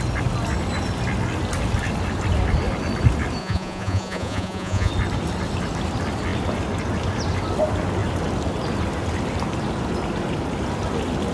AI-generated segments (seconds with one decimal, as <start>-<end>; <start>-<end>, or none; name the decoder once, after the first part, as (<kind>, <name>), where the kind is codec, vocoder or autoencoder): 3.4-4.9 (vocoder, Vocos)